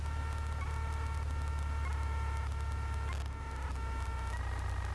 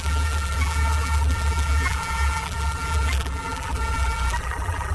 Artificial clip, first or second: second